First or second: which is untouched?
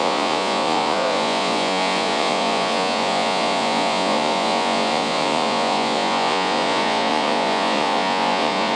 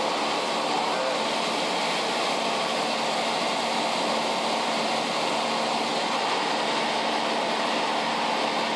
second